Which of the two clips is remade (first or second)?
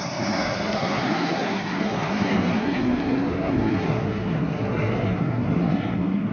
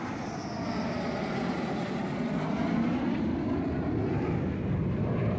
first